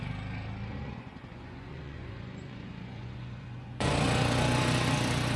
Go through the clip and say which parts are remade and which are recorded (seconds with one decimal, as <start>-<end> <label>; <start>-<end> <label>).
0.0-0.7 recorded; 0.7-3.9 remade; 3.9-5.4 recorded